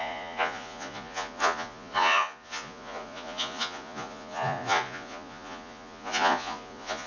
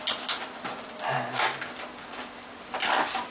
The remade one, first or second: first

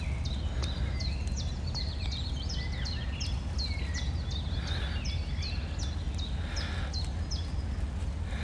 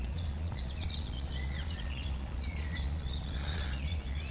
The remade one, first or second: second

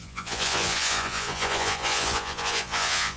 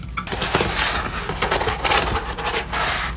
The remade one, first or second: first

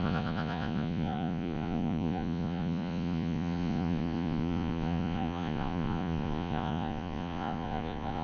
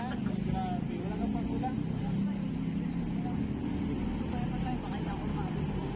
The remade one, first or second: first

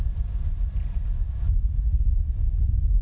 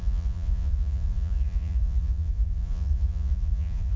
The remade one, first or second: second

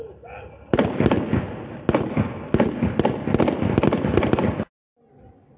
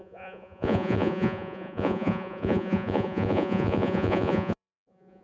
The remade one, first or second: second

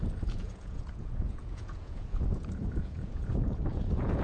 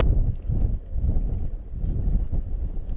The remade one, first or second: first